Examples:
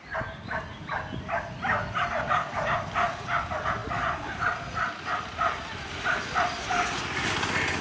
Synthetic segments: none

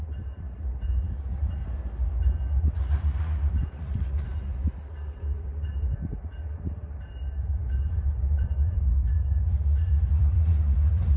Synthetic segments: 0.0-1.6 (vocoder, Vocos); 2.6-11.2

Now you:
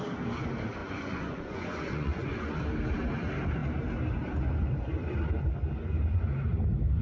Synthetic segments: 0.8-2.5 (vocoder, Vocos)